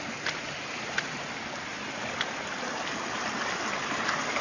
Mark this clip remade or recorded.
recorded